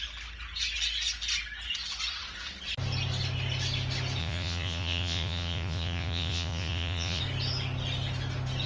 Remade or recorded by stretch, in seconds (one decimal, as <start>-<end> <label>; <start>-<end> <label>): 0.0-4.2 recorded; 4.2-7.2 remade; 7.2-8.7 recorded